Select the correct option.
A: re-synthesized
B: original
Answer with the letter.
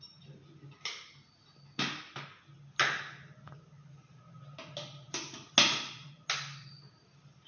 B